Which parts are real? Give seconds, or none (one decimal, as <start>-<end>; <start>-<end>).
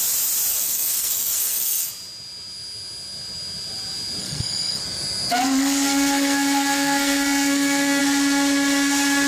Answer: 0.0-0.5; 1.9-4.2; 4.8-5.3; 8.0-9.3